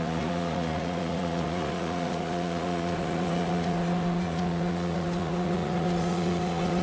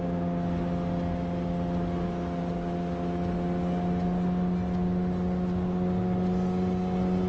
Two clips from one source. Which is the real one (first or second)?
second